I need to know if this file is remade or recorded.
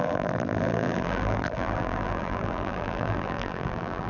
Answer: remade